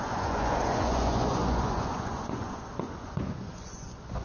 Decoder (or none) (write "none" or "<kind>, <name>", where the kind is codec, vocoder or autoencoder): vocoder, Vocos